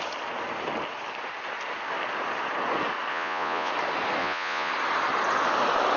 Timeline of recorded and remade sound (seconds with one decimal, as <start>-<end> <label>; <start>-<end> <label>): 0.0-3.1 recorded; 3.1-3.7 remade; 3.7-4.2 recorded; 4.2-4.7 remade; 4.7-6.0 recorded